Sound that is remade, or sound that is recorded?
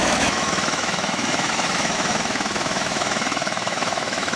remade